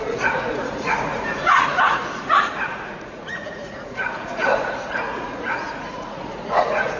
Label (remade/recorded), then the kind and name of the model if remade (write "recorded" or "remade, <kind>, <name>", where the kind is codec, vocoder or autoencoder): remade, vocoder, Vocos